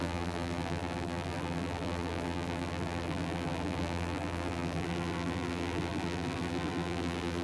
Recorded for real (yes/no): no